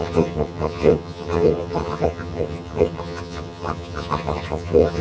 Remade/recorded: remade